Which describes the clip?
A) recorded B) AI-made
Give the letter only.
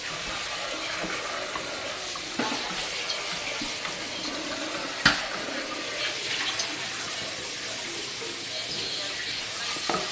A